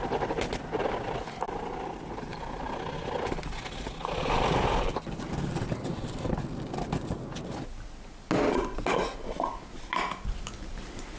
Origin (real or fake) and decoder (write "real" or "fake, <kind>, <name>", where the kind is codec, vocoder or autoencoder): real